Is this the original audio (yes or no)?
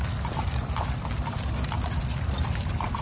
yes